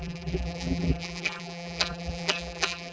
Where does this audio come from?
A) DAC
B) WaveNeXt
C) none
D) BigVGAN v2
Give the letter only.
D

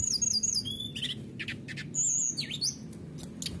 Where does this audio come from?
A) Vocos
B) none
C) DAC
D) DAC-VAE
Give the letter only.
B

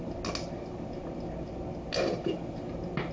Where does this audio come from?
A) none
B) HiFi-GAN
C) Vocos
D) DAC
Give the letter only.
A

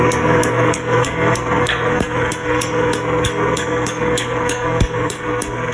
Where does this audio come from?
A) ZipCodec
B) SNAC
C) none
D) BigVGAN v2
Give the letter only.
B